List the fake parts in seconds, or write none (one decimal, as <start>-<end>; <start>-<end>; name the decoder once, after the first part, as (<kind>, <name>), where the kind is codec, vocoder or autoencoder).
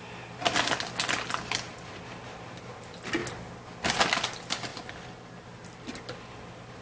none